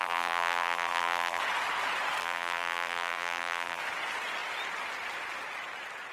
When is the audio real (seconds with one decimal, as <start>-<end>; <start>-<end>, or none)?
1.4-2.2; 3.8-6.1